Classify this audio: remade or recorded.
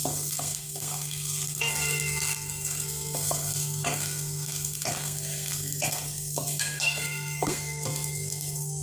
remade